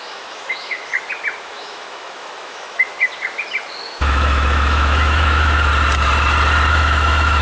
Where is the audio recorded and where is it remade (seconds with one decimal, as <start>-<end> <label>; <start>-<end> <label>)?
0.0-0.9 remade; 0.9-1.4 recorded; 1.4-2.9 remade; 2.9-3.9 recorded; 3.9-5.7 remade; 5.7-6.7 recorded; 6.7-7.4 remade